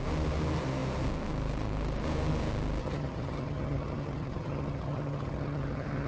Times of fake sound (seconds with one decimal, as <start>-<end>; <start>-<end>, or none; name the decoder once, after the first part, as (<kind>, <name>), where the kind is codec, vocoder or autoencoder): 2.8-6.1 (vocoder, HiFi-GAN)